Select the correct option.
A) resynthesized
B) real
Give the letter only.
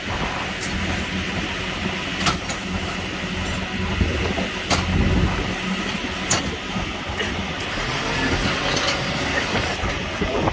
B